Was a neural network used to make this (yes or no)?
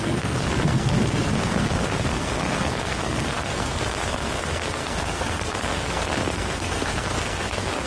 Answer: yes